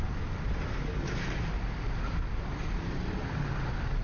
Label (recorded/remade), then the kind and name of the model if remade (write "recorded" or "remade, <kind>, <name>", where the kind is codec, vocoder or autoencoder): recorded